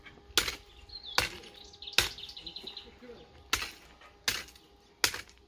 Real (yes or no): yes